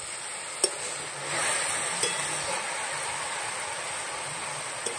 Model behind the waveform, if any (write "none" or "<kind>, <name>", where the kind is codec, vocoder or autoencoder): none